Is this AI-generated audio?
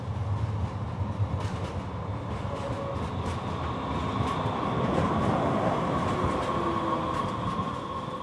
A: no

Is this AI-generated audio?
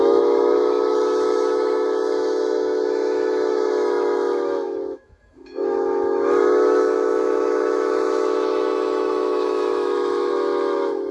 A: yes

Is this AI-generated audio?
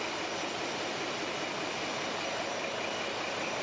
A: no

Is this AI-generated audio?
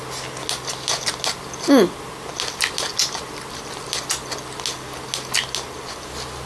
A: no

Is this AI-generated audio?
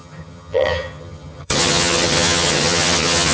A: yes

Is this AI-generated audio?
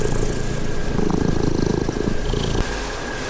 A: no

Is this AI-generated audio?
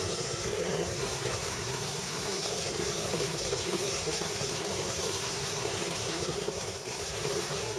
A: yes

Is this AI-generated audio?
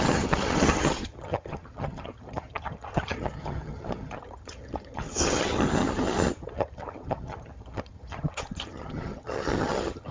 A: yes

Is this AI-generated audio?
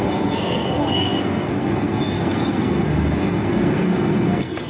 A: yes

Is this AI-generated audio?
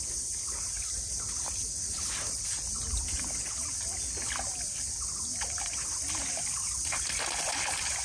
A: no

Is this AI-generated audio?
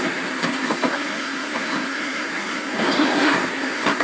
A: yes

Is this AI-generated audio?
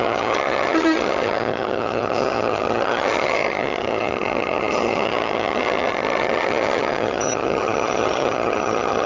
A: yes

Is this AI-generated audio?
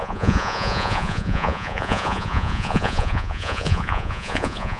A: yes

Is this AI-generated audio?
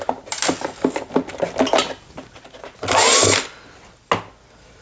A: no